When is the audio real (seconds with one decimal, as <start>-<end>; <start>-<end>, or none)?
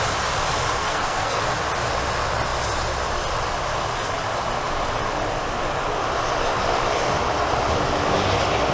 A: 0.0-0.8; 1.4-8.7